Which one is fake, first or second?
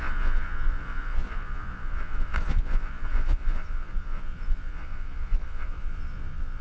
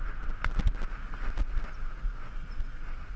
first